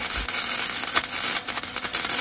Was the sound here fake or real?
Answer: real